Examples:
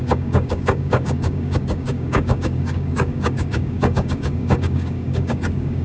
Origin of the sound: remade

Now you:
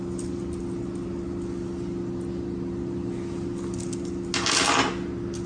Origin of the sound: recorded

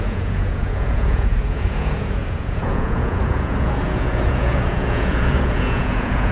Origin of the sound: remade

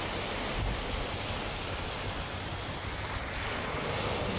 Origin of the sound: recorded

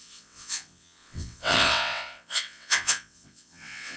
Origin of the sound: remade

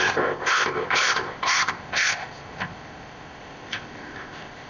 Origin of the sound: remade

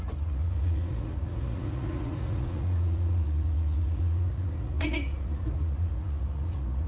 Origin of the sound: remade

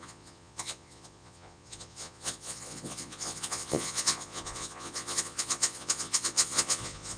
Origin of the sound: remade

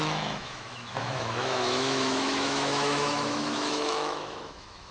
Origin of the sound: remade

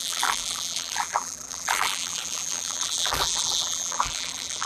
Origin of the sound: remade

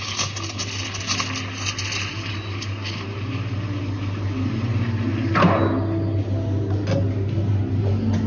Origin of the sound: recorded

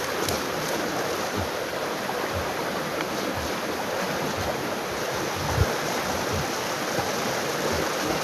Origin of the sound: recorded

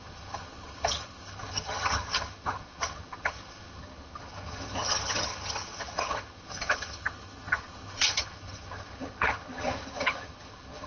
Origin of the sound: remade